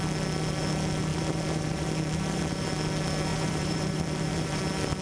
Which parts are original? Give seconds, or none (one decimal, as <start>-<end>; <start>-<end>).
0.0-1.1; 2.7-3.3; 4.6-5.0